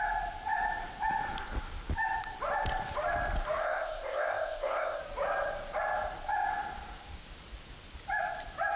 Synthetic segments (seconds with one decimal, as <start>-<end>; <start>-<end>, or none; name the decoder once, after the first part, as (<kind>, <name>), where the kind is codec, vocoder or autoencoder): 3.6-5.0 (codec, ZipCodec)